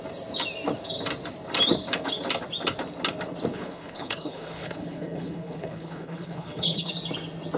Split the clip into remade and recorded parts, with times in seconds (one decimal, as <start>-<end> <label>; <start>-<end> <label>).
0.0-3.5 recorded; 3.5-6.9 remade; 6.9-7.6 recorded